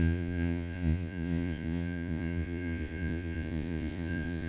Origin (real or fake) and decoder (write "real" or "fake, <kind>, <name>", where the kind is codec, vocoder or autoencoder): fake, vocoder, Vocos